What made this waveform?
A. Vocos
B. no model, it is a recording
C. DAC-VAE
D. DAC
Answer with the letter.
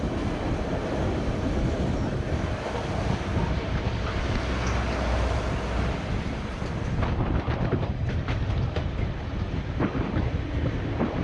B